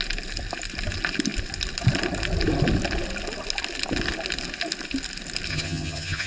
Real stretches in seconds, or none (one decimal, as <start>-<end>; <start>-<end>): 0.0-5.5